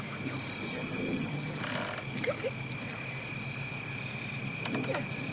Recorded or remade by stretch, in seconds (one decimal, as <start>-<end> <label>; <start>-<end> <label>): 0.0-0.7 recorded; 0.7-1.6 remade; 1.6-5.3 recorded